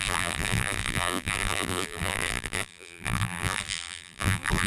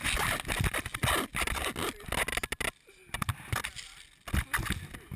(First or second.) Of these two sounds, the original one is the second